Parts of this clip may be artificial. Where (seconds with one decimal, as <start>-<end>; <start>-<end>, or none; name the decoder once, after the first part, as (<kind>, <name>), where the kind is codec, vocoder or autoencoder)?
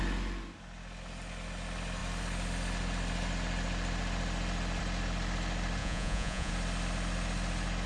5.8-6.5 (vocoder, Vocos)